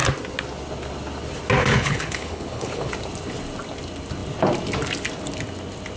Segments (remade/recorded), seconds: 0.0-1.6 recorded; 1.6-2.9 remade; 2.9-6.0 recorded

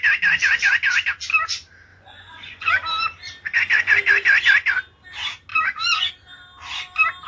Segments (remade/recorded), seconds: 0.0-1.9 recorded; 1.9-2.7 remade; 2.7-5.5 recorded; 5.5-6.1 remade; 6.1-7.3 recorded

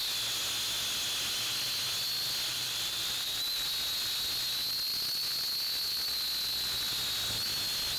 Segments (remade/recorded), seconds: 0.0-2.5 recorded; 2.5-3.4 remade; 3.4-8.0 recorded

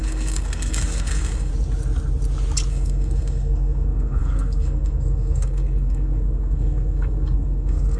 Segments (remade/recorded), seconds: 0.0-1.5 remade; 1.5-2.7 recorded; 2.7-8.0 remade

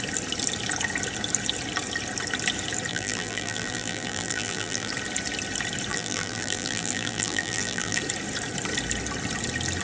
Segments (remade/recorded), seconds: 0.0-2.9 recorded; 2.9-4.9 remade; 4.9-5.9 recorded; 5.9-8.0 remade; 8.0-9.8 recorded

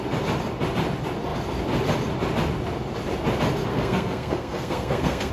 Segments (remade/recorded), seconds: 0.0-3.7 recorded; 3.7-5.3 remade

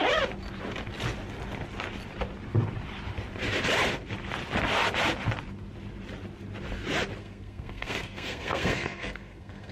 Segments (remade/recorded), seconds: 0.0-7.2 recorded; 7.2-9.7 remade